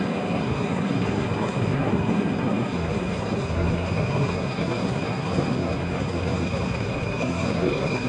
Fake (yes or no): yes